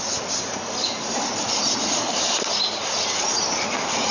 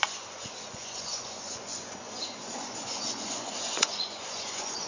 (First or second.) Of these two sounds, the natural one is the first